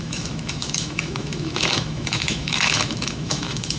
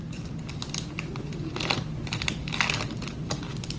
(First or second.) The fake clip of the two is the first